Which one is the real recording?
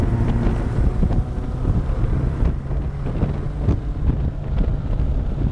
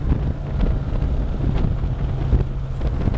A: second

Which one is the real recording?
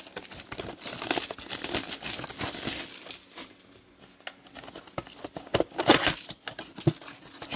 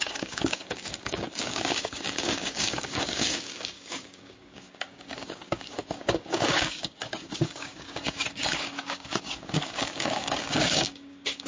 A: first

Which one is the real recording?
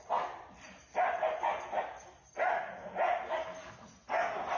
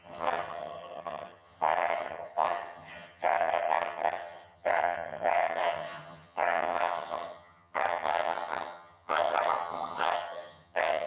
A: first